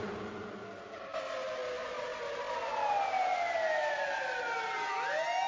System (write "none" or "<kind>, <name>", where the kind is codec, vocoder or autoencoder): none